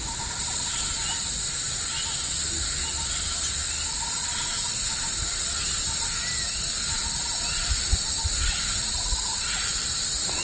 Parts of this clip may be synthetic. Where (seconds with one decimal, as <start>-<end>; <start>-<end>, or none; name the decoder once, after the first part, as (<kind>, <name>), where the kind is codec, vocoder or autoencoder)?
none